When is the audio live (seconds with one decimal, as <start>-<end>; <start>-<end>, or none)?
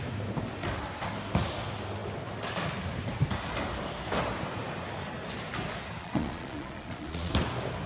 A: 0.0-6.0; 7.3-7.9